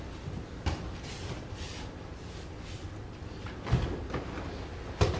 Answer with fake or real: real